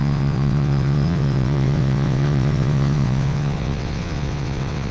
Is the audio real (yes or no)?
no